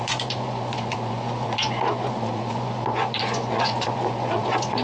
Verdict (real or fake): fake